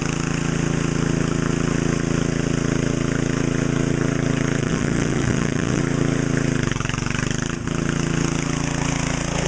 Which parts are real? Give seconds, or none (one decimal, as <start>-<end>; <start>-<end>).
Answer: 0.0-4.6; 5.8-9.5